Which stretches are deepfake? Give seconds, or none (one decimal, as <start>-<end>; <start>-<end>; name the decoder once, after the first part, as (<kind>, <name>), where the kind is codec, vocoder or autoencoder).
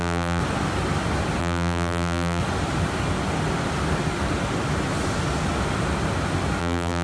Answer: 0.0-0.4 (vocoder, BigVGAN v2); 1.4-2.4; 6.6-7.0